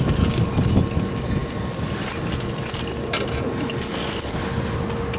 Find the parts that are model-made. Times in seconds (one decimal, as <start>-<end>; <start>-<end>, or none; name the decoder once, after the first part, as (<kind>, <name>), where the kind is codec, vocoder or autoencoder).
none